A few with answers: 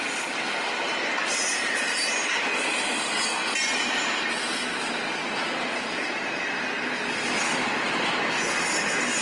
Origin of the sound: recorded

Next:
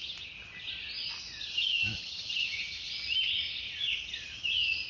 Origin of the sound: recorded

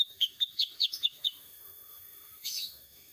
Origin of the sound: remade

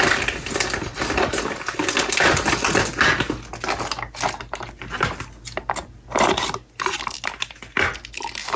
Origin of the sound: recorded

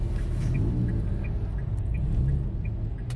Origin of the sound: recorded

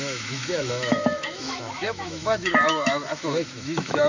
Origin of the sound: remade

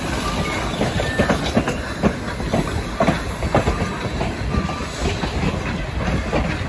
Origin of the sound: recorded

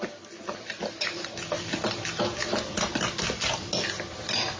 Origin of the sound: recorded